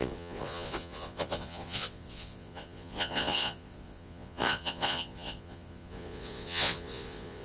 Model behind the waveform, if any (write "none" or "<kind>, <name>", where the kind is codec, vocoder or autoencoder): vocoder, Vocos